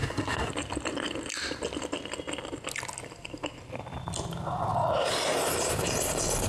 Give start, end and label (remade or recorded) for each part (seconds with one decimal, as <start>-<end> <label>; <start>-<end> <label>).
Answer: 0.0-0.5 remade; 0.5-6.5 recorded